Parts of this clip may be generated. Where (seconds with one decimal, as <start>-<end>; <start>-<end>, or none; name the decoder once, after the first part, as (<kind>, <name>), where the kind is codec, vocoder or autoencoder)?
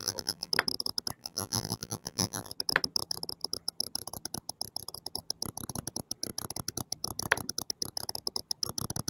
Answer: 0.0-0.5 (vocoder, BigVGAN v2); 1.2-2.5